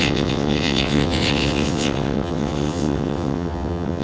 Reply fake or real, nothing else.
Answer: fake